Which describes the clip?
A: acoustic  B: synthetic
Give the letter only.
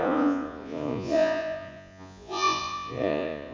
B